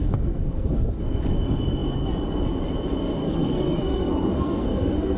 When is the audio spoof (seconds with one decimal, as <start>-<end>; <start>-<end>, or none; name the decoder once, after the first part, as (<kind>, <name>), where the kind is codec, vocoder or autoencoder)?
0.0-1.0 (codec, SNAC); 3.2-5.2